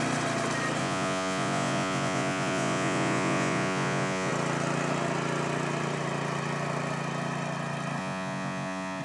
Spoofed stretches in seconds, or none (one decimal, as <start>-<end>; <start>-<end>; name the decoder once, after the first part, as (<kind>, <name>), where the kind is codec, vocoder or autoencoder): 0.8-4.3 (vocoder, Vocos); 8.0-9.0